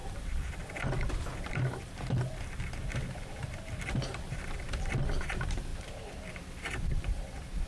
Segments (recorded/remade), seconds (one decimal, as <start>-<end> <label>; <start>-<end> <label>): 0.0-5.7 remade; 5.7-6.4 recorded; 6.4-7.7 remade